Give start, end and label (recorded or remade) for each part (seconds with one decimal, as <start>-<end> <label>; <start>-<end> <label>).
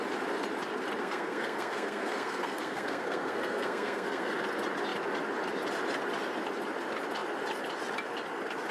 0.0-1.0 recorded; 1.0-4.3 remade; 4.3-8.7 recorded